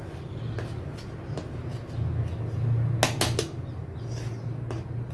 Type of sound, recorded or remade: recorded